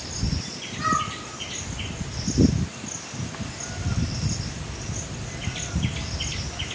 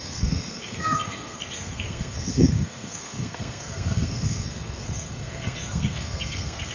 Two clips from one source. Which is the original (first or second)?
first